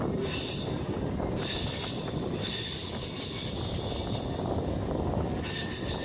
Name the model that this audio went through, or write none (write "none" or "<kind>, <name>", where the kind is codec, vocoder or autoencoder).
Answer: none